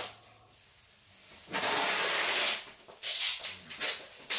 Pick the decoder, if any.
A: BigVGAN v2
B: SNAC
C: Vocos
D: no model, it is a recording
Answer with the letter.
D